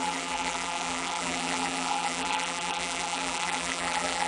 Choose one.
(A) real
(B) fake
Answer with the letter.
B